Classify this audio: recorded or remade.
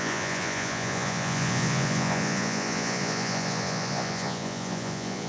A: remade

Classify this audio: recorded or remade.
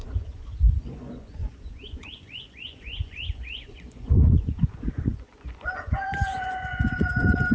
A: remade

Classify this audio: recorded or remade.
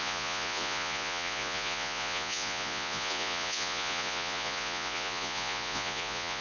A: remade